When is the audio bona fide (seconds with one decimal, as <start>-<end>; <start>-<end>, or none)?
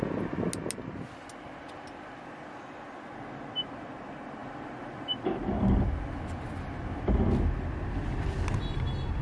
0.0-9.2